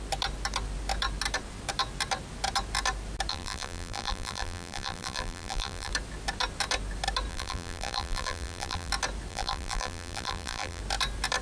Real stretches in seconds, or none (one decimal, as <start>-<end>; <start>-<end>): 0.0-3.3; 5.9-7.3; 8.9-9.3; 10.8-11.4